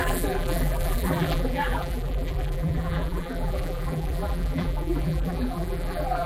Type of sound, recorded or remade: remade